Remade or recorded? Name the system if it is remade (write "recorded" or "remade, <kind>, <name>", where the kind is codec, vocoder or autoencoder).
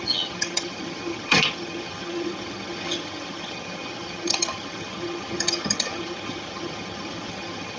remade, vocoder, HiFi-GAN